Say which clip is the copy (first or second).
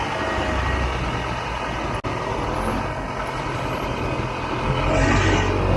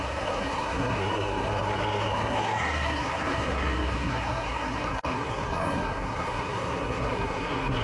second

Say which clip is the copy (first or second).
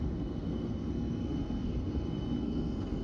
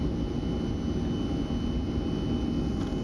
first